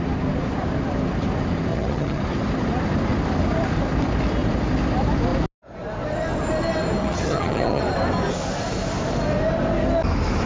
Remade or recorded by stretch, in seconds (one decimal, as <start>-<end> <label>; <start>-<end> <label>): 0.0-1.7 recorded; 1.7-2.2 remade; 2.2-7.0 recorded; 7.0-7.8 remade; 7.8-10.5 recorded